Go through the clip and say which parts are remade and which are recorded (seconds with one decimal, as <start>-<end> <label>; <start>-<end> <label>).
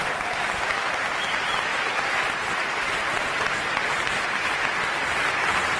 0.0-1.7 recorded; 1.7-4.2 remade; 4.2-5.8 recorded